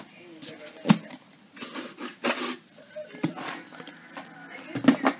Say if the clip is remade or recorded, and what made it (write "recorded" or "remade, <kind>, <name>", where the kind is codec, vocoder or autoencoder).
recorded